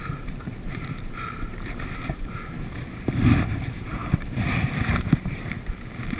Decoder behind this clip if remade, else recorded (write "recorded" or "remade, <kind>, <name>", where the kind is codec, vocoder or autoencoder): remade, vocoder, BigVGAN v2